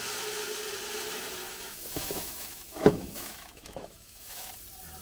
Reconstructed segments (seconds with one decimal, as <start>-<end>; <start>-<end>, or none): 1.5-4.5